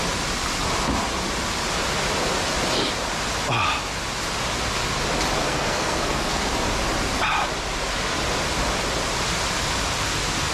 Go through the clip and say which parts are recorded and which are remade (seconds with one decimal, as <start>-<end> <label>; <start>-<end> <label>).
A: 0.0-5.4 recorded; 5.4-6.5 remade; 6.5-10.5 recorded